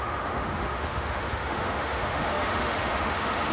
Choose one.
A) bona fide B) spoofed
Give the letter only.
B